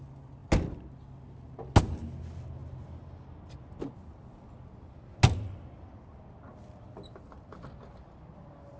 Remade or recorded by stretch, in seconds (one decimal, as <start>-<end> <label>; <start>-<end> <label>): 0.0-8.8 recorded